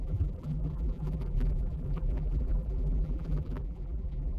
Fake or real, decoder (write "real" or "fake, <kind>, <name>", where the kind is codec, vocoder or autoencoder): fake, vocoder, BigVGAN v2